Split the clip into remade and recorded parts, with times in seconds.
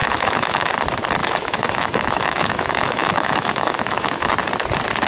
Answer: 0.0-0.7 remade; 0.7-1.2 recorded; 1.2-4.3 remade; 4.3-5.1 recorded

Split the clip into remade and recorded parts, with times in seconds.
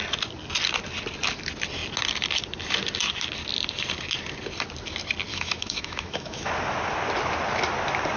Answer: 0.0-5.3 recorded; 5.3-6.5 remade; 6.5-8.2 recorded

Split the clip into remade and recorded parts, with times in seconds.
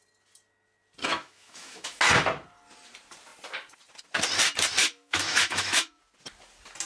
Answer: 0.0-1.0 recorded; 1.0-2.0 remade; 2.0-4.8 recorded; 4.8-6.0 remade; 6.0-6.9 recorded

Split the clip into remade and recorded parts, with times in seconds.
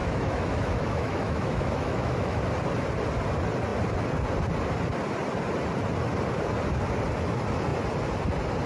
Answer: 0.0-2.4 remade; 2.4-8.7 recorded